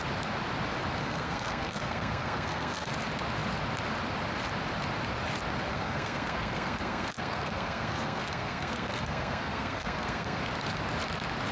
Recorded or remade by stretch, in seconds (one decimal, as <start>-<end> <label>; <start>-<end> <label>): 0.0-1.0 recorded; 1.0-2.9 remade; 2.9-5.7 recorded; 5.7-10.4 remade; 10.4-11.5 recorded